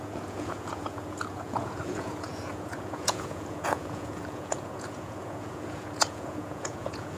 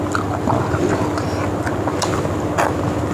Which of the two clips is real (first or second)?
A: second